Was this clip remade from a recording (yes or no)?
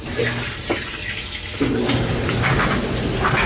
no